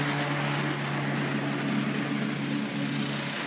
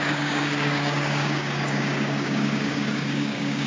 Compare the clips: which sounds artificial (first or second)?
second